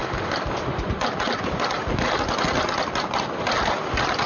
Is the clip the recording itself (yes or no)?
yes